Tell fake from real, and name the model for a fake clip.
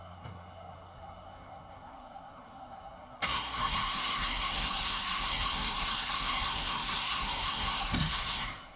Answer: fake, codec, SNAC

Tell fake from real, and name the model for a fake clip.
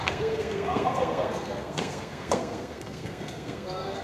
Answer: fake, codec, SNAC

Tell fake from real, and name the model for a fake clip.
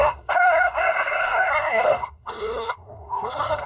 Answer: fake, codec, SNAC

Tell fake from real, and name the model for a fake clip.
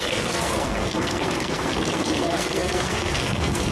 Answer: fake, codec, SNAC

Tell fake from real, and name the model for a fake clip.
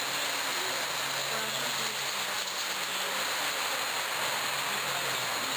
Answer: real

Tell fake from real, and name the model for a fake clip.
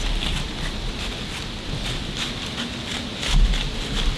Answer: real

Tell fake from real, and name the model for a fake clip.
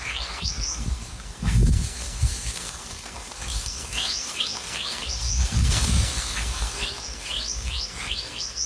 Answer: fake, codec, SNAC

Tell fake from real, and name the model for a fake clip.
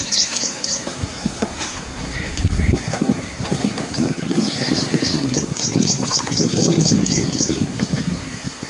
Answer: fake, codec, SNAC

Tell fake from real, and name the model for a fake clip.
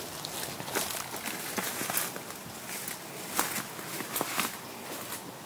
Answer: real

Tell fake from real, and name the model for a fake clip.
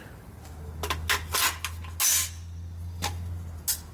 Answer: real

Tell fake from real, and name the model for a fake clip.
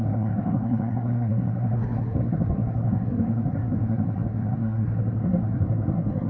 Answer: fake, codec, SNAC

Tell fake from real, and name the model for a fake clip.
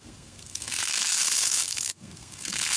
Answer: fake, codec, SNAC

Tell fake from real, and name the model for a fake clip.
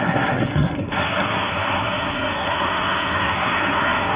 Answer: fake, codec, SNAC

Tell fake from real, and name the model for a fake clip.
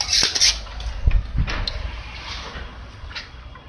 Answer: real